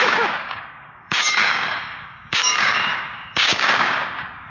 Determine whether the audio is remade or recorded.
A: remade